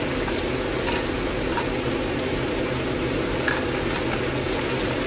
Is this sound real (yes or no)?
yes